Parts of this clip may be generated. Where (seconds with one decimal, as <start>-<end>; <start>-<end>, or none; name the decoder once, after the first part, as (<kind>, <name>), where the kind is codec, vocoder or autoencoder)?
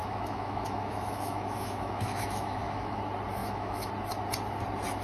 0.0-3.0 (autoencoder, DAC-VAE); 3.4-3.9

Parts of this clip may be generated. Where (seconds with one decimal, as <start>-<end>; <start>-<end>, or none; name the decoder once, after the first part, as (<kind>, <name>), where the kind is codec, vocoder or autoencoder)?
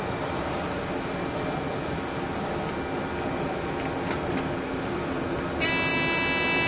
none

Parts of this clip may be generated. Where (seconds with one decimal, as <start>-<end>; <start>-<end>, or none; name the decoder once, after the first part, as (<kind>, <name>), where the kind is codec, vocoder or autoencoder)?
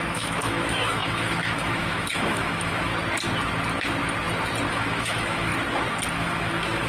0.0-2.9 (autoencoder, DAC-VAE); 4.7-5.5; 6.1-6.9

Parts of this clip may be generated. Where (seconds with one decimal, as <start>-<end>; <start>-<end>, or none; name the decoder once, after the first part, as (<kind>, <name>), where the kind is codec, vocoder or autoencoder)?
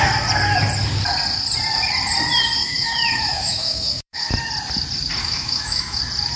2.6-4.3 (autoencoder, DAC-VAE); 5.2-6.0